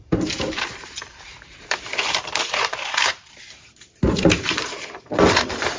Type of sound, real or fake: fake